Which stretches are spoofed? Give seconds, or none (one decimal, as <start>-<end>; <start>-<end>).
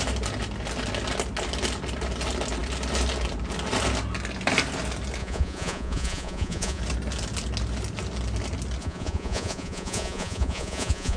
5.2-6.8; 8.8-11.2